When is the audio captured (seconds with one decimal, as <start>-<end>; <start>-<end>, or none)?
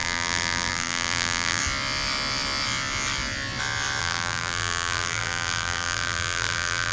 1.6-4.0